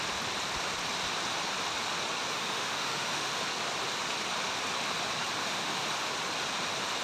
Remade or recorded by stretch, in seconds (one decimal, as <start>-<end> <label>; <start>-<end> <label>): 0.0-2.3 recorded; 2.3-3.4 remade; 3.4-5.4 recorded; 5.4-6.1 remade; 6.1-7.0 recorded